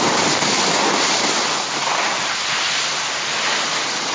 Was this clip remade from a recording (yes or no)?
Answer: no